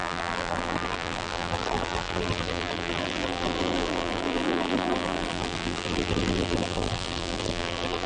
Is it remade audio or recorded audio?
remade